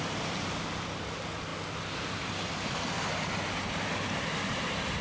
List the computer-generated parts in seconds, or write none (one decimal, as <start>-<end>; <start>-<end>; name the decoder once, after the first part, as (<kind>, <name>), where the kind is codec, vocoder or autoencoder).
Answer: none